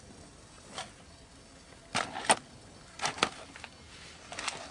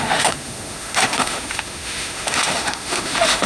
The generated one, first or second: second